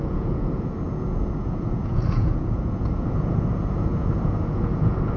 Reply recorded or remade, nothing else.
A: remade